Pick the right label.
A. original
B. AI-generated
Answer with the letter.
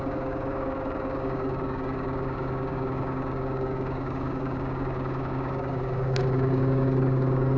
B